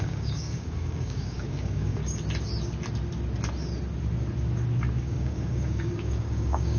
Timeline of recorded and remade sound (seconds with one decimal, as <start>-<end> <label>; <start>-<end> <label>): 0.0-2.0 remade; 2.0-5.0 recorded; 5.0-6.8 remade